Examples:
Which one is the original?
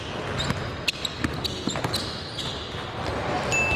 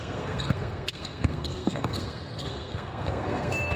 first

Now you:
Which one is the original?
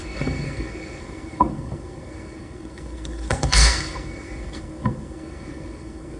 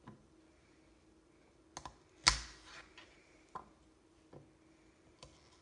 second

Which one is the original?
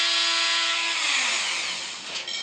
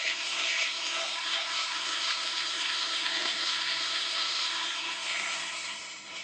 first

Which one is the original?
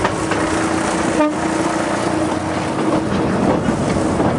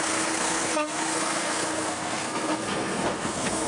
first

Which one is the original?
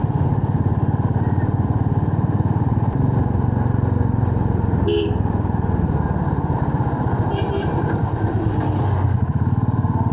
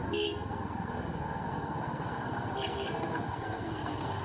first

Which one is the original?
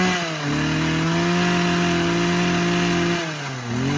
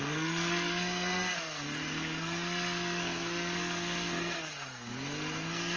first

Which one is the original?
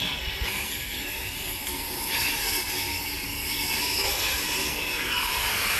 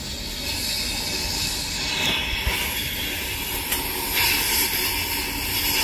second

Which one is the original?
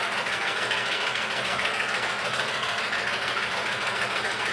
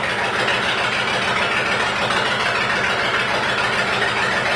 second